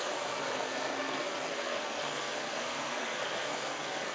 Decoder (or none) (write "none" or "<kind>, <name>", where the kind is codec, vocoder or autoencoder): codec, SNAC